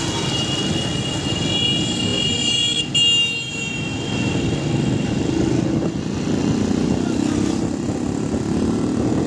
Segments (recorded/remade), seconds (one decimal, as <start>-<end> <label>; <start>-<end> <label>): 0.0-9.3 recorded